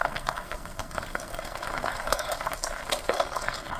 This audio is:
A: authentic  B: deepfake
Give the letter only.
B